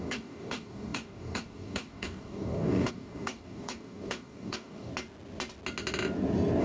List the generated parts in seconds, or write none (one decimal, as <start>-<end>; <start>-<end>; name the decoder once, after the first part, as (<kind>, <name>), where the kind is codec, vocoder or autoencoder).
0.0-4.9 (codec, DAC)